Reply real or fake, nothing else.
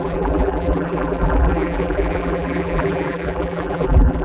fake